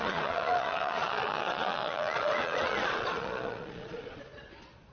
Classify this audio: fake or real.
fake